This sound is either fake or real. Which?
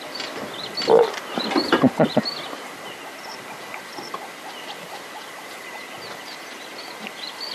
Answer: real